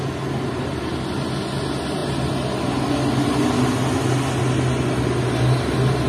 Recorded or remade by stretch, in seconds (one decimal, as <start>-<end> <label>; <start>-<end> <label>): 0.0-6.1 recorded